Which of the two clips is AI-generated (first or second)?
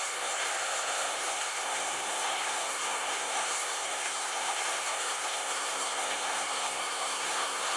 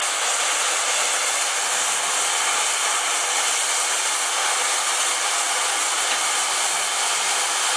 first